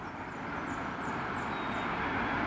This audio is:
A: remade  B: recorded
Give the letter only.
B